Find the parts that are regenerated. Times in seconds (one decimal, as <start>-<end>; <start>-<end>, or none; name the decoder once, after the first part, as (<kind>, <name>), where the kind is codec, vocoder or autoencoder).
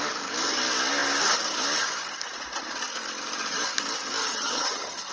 4.2-5.1 (vocoder, HiFi-GAN)